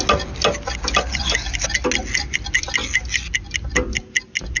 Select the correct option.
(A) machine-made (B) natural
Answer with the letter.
B